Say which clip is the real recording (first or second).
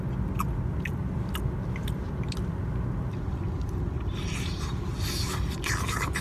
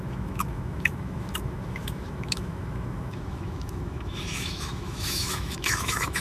first